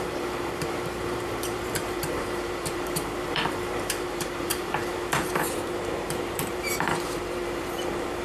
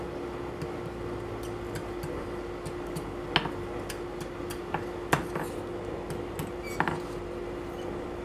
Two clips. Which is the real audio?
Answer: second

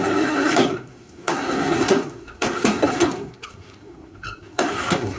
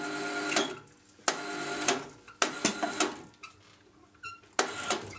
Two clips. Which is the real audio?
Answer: second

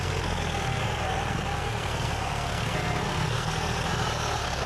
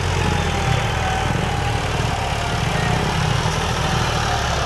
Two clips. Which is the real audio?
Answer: second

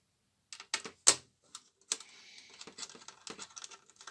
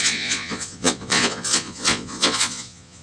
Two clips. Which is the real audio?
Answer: first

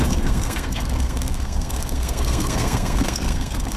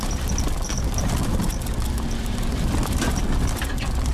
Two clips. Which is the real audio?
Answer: second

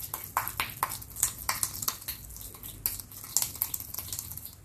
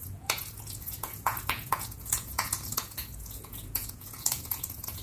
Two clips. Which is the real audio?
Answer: first